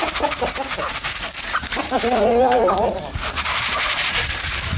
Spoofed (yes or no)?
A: yes